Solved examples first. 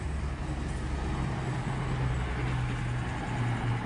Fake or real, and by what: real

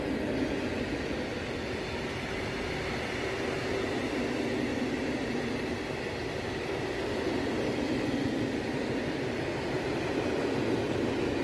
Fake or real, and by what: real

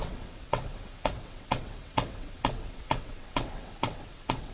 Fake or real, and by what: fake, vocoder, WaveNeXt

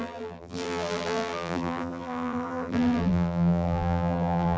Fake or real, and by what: fake, vocoder, BigVGAN v2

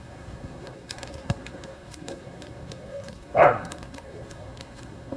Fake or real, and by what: fake, codec, SNAC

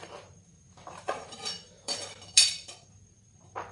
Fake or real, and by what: fake, vocoder, BigVGAN v2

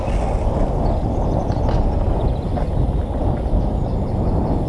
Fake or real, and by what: real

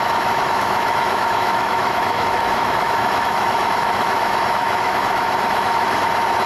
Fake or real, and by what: fake, autoencoder, DAC-VAE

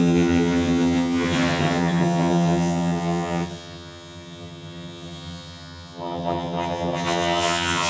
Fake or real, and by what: fake, vocoder, HiFi-GAN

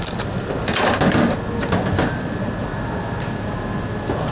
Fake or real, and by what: real